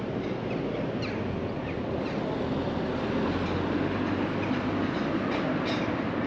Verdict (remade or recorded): recorded